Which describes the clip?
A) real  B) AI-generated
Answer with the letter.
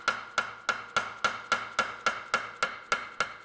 A